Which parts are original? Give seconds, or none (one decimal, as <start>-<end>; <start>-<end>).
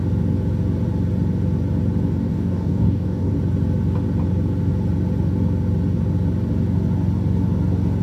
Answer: 0.0-2.2; 3.3-8.0